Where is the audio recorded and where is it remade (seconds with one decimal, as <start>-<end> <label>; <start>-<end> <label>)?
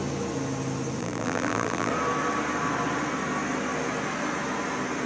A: 0.0-1.0 recorded; 1.0-1.9 remade; 1.9-5.1 recorded